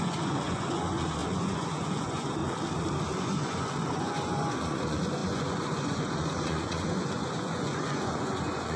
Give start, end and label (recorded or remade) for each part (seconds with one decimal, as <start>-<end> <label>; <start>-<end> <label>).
0.0-2.4 remade; 2.4-3.2 recorded; 3.2-8.8 remade